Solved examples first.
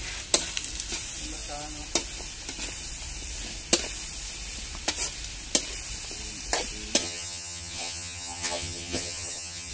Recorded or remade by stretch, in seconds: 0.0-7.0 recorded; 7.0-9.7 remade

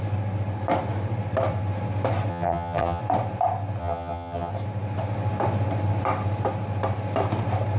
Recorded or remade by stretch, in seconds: 0.0-2.3 recorded; 2.3-3.0 remade; 3.0-3.8 recorded; 3.8-4.5 remade; 4.5-7.8 recorded

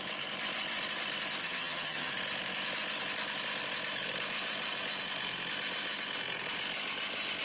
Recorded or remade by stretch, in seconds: 0.0-1.4 recorded; 1.4-2.1 remade; 2.1-7.4 recorded

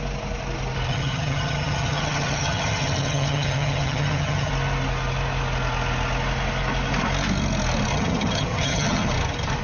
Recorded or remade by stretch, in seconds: 0.0-0.9 recorded; 0.9-4.5 remade; 4.5-7.9 recorded; 7.9-9.1 remade; 9.1-9.6 recorded

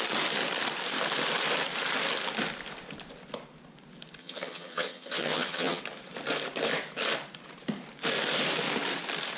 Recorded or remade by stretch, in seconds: 0.0-4.2 recorded; 4.2-5.8 remade; 5.8-9.4 recorded

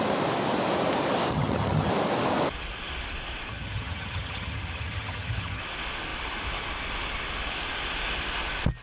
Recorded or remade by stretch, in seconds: 0.0-1.3 recorded; 1.3-1.9 remade; 1.9-3.5 recorded; 3.5-5.6 remade; 5.6-8.8 recorded

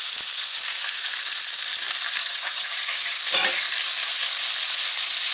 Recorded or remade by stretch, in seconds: 0.0-2.2 recorded; 2.2-3.2 remade; 3.2-5.3 recorded

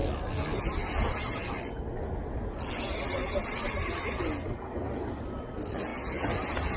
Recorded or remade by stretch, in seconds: 0.0-6.8 recorded